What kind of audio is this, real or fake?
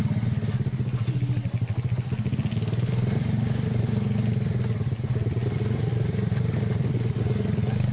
real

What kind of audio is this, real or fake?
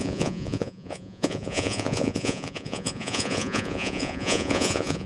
fake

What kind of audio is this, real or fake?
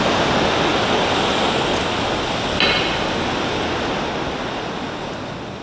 real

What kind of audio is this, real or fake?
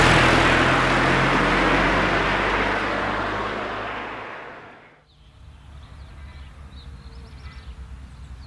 real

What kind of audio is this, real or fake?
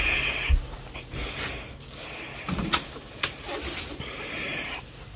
fake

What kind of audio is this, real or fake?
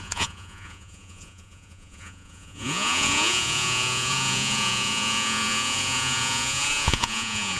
fake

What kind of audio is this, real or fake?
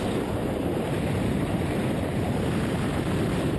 fake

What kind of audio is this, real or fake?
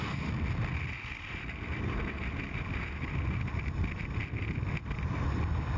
real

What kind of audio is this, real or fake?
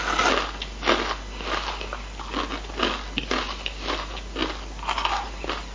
real